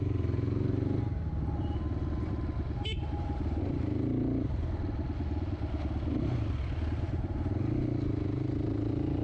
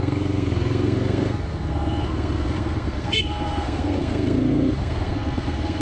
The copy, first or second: second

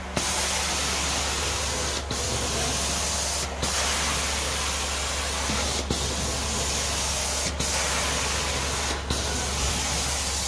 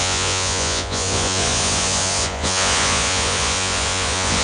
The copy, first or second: second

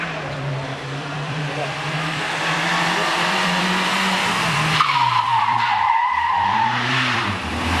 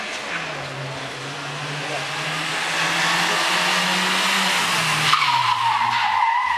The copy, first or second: first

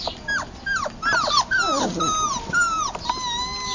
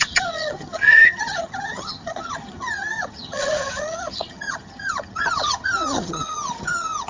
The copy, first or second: second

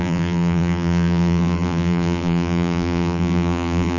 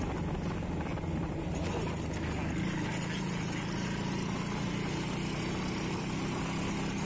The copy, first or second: first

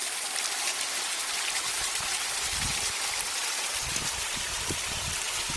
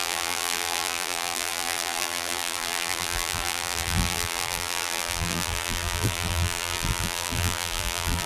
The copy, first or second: second